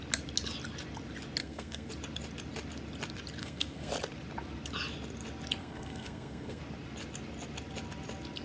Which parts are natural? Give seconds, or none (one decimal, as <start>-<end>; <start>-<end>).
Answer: 0.0-1.4; 1.9-3.4; 3.9-5.6; 6.6-8.4